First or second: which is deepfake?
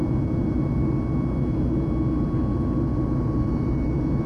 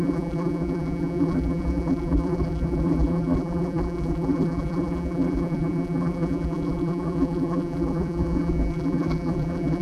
second